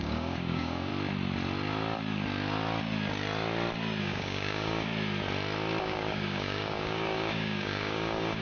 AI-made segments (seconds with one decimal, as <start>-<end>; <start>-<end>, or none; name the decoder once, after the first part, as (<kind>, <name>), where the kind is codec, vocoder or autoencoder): 0.0-0.9 (codec, DAC); 4.0-4.9; 5.8-8.4